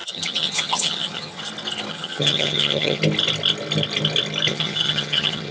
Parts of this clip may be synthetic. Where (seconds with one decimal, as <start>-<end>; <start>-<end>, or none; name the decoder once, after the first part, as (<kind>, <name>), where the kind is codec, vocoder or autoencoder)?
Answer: 0.0-1.4 (vocoder, HiFi-GAN); 1.9-3.0; 4.5-5.5